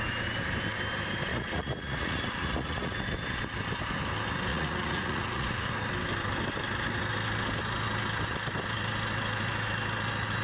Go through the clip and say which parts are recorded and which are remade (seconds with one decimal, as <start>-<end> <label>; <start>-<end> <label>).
0.0-1.3 recorded; 1.3-3.0 remade; 3.0-4.5 recorded; 4.5-5.7 remade; 5.7-10.4 recorded